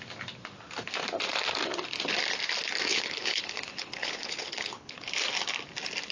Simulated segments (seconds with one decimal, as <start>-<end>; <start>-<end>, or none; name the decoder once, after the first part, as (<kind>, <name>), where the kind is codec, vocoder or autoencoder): 2.9-5.1 (codec, HILCodec)